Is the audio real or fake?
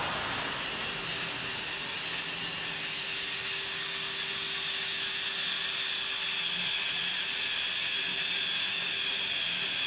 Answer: real